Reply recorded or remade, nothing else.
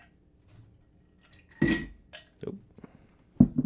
recorded